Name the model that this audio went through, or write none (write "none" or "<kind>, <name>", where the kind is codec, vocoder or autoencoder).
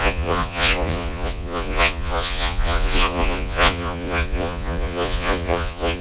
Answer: vocoder, Vocos